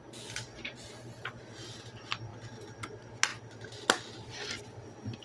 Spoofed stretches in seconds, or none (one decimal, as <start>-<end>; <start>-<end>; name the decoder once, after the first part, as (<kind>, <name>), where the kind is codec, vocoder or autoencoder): 0.5-1.8 (vocoder, BigVGAN v2)